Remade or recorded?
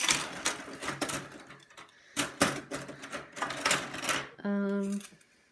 recorded